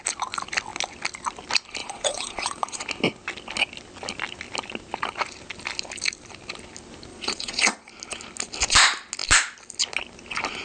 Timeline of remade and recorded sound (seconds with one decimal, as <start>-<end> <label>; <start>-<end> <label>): 0.0-1.8 recorded; 1.8-2.8 remade; 2.8-7.1 recorded; 7.1-7.9 remade; 7.9-10.6 recorded